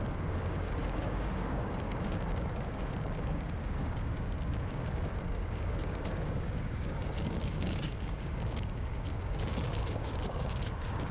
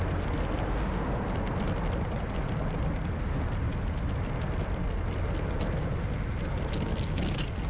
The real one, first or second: second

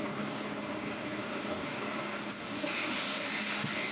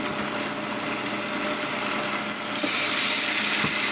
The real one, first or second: second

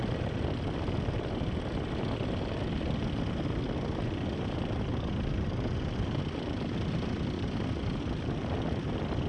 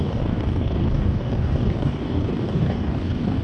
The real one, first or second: first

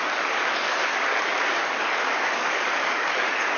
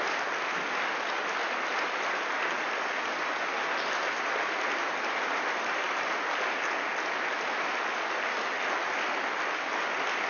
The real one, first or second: second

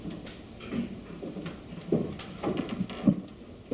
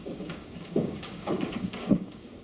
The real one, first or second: first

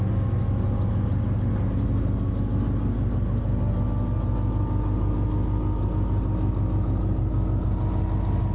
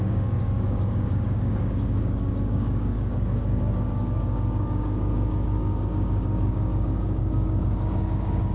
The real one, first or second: first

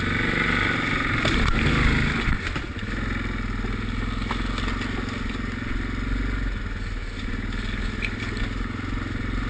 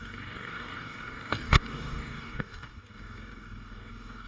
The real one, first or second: first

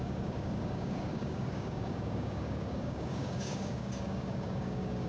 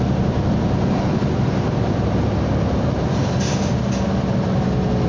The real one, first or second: second